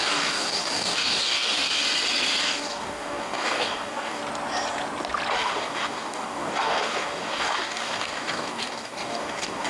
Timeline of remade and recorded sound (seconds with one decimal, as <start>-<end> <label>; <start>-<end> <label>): 0.0-1.8 remade; 1.8-2.4 recorded; 2.4-4.2 remade; 4.2-5.3 recorded; 5.3-9.7 remade